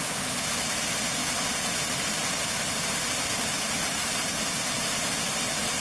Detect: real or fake real